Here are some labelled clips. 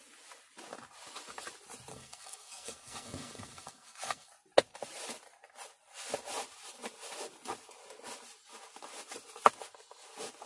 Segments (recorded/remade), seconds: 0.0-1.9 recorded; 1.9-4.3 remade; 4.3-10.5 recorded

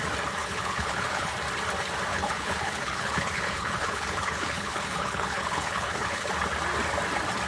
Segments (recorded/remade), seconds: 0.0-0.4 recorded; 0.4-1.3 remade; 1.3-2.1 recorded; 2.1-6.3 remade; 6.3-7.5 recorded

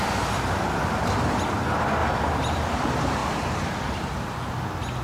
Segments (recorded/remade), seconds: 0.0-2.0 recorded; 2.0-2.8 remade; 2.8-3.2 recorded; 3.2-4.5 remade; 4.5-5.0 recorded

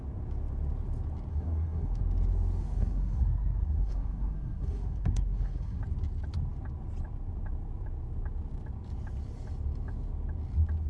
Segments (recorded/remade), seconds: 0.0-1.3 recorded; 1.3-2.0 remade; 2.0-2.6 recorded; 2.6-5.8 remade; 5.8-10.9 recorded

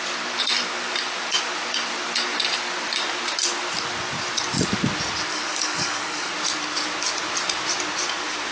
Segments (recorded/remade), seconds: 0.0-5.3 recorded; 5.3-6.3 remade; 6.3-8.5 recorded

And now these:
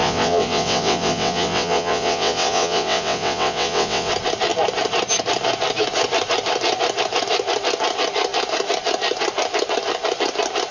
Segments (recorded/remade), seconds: 0.0-4.1 remade; 4.1-10.7 recorded